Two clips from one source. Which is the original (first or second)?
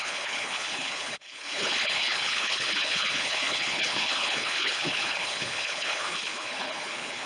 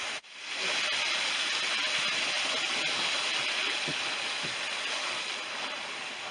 second